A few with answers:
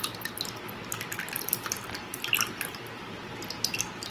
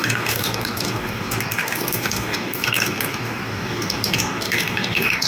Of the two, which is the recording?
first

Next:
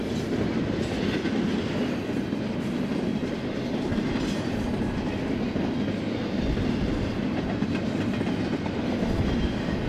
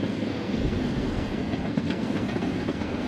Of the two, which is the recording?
first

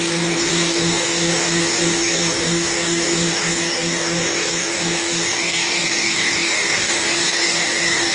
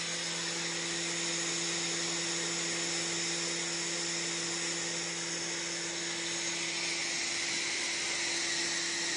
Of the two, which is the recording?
second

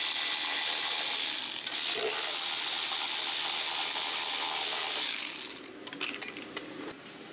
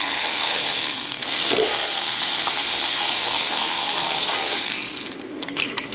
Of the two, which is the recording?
first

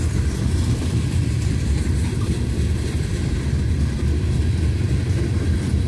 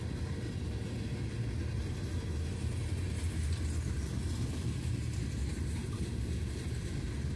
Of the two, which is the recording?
second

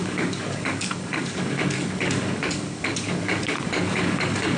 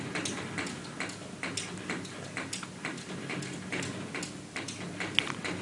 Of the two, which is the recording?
second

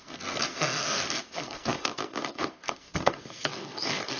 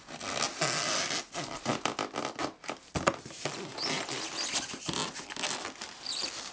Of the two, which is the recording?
second